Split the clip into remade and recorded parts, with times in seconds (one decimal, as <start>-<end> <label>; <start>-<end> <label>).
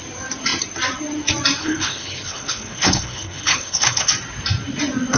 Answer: 0.0-1.6 recorded; 1.6-4.1 remade; 4.1-5.2 recorded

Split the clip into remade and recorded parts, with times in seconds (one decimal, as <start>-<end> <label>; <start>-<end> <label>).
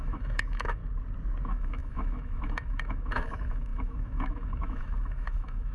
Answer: 0.0-0.8 remade; 0.8-1.4 recorded; 1.4-5.7 remade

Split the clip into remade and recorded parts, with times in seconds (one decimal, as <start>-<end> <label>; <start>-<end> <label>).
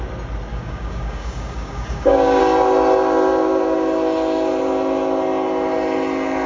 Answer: 0.0-0.5 recorded; 0.5-2.4 remade; 2.4-6.5 recorded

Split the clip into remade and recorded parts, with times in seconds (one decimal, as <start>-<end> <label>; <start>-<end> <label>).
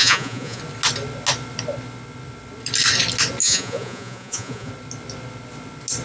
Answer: 0.0-0.6 remade; 0.6-3.4 recorded; 3.4-4.7 remade; 4.7-6.0 recorded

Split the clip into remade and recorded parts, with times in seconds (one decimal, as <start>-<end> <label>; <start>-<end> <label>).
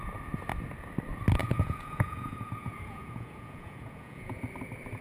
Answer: 0.0-1.4 recorded; 1.4-4.4 remade; 4.4-5.0 recorded